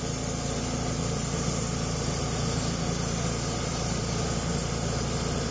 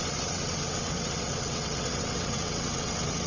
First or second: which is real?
first